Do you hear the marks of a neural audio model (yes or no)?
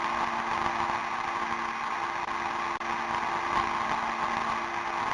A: no